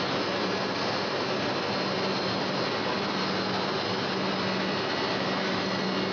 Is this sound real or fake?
real